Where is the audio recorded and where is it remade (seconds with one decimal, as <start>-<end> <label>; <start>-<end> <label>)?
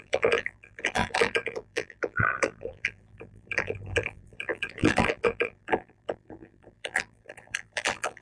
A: 0.0-8.2 remade